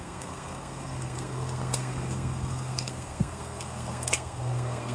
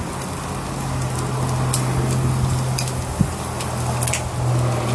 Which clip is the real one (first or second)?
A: second